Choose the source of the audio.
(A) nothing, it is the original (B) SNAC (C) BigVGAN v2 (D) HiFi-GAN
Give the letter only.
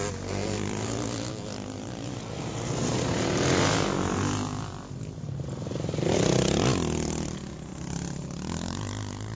A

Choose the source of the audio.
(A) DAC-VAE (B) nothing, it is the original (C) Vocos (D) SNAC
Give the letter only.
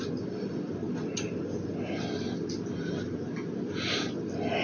B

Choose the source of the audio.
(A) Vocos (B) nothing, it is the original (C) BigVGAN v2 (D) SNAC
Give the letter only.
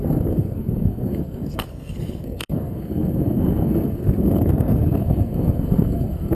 D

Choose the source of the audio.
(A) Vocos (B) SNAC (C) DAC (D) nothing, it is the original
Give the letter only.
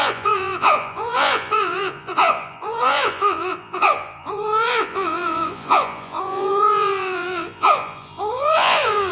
A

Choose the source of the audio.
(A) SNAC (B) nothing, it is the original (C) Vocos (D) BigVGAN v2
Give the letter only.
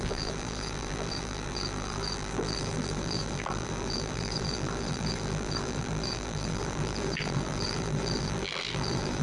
D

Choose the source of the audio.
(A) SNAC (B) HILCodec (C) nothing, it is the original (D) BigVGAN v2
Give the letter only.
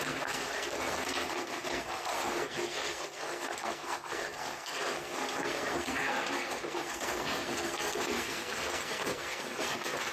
A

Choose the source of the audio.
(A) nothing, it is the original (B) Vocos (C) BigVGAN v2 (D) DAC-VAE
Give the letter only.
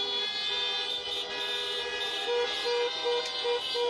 A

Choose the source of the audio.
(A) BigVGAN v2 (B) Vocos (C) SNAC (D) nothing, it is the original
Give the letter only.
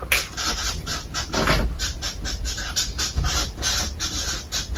D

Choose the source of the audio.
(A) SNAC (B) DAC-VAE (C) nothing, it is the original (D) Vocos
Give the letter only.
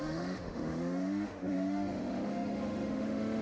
B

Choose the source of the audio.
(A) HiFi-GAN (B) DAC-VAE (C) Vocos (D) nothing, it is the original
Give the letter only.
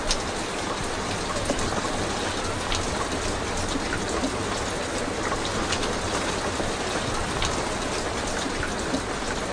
D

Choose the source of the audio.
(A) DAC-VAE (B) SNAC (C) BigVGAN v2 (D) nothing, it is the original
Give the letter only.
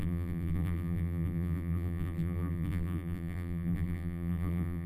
C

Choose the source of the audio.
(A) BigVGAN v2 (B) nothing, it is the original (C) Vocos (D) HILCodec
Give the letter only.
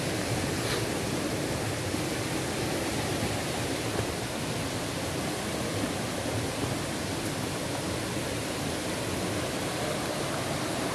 B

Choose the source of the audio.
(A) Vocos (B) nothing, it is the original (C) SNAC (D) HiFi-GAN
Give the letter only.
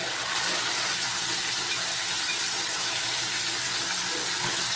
B